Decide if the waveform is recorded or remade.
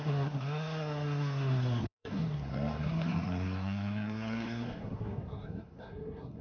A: remade